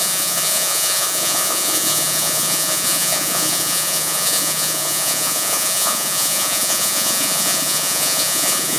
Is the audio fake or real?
fake